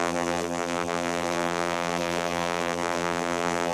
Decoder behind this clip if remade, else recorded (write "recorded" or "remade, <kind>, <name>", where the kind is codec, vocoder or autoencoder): remade, vocoder, BigVGAN v2